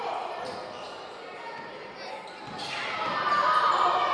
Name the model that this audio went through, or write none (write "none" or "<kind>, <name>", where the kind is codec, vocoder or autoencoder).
none